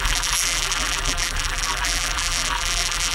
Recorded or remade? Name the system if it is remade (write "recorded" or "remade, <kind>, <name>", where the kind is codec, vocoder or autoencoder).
remade, vocoder, BigVGAN v2